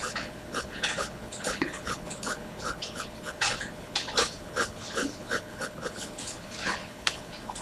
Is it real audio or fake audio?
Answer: fake